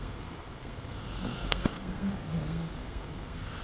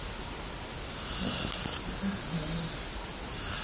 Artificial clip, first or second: first